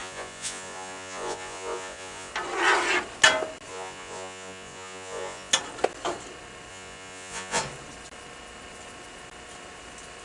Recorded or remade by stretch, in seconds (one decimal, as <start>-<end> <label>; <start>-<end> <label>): 0.0-2.3 remade; 2.3-3.7 recorded; 3.7-5.5 remade; 5.5-6.7 recorded; 6.7-7.6 remade; 7.6-10.2 recorded